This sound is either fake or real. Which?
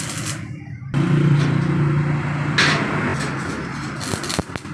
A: real